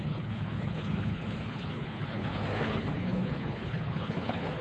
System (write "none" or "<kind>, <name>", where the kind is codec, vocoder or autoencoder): codec, HILCodec